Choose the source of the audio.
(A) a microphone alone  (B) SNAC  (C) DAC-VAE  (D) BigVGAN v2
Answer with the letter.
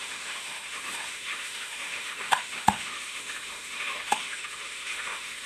C